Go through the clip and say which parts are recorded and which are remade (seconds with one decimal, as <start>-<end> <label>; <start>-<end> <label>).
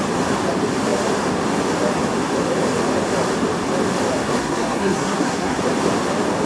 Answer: 0.0-4.2 recorded; 4.2-5.6 remade; 5.6-6.5 recorded